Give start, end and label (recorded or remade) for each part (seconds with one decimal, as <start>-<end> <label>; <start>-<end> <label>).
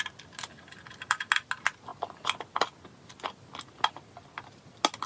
0.0-5.1 recorded